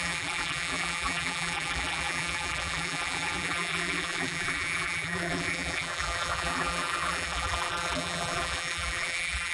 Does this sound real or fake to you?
fake